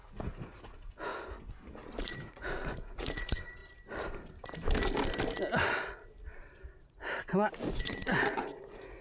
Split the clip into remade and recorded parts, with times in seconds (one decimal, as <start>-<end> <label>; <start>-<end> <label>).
0.0-1.1 remade; 1.1-2.0 recorded; 2.0-3.6 remade; 3.6-6.9 recorded; 6.9-9.0 remade